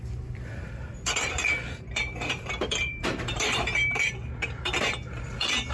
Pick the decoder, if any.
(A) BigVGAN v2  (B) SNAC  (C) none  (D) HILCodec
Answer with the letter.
A